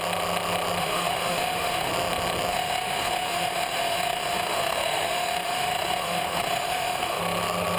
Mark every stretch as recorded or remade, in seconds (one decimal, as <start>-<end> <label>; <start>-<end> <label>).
0.0-0.8 recorded; 0.8-1.9 remade; 1.9-2.5 recorded; 2.5-7.2 remade; 7.2-7.8 recorded